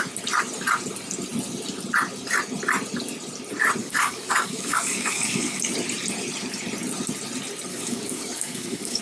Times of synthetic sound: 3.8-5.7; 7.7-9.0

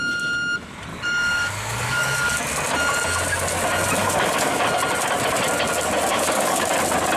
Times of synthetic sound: 0.9-2.4; 4.0-4.6; 6.1-6.7

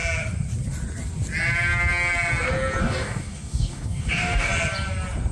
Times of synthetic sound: 2.8-4.5

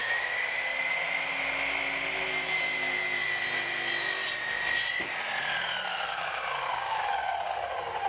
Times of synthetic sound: 0.0-0.8; 5.9-7.5

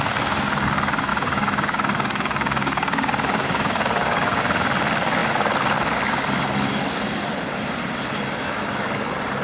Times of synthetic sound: 1.1-4.4

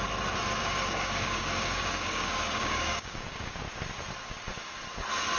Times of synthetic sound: 0.6-3.6